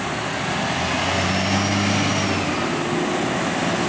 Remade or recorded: recorded